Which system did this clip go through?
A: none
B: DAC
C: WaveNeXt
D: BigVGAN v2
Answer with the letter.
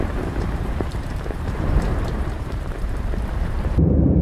D